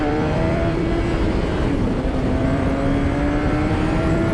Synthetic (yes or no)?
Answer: yes